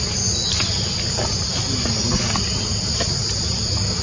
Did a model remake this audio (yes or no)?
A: no